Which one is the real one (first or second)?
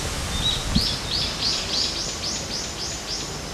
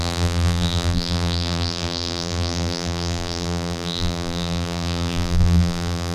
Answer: first